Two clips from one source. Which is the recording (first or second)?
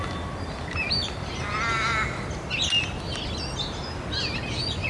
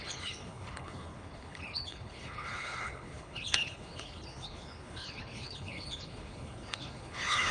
first